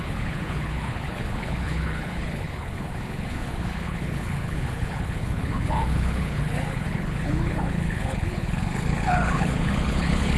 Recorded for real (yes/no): no